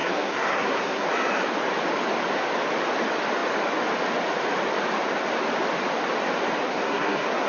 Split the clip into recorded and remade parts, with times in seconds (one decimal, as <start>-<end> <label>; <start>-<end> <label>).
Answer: 0.0-1.1 remade; 1.1-6.6 recorded; 6.6-7.5 remade